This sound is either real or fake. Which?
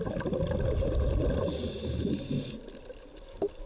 real